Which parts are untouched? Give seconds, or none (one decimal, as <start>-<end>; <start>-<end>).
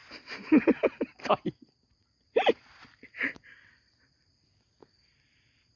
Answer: 0.0-1.3